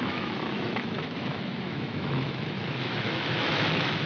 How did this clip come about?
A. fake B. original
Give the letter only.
A